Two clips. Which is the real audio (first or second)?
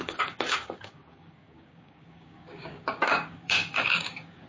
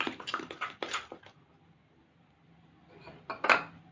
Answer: second